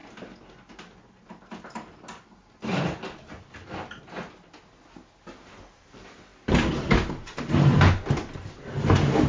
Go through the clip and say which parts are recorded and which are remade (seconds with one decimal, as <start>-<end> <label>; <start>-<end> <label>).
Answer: 0.0-9.3 recorded